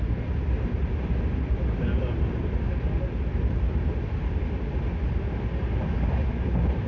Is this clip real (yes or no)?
yes